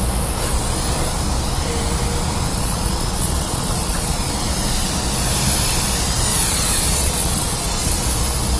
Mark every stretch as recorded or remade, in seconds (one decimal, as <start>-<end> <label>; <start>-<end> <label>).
0.0-2.5 recorded; 2.5-4.3 remade; 4.3-6.3 recorded; 6.3-8.0 remade; 8.0-8.6 recorded